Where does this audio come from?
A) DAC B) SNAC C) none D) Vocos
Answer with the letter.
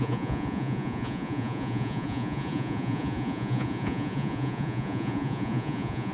D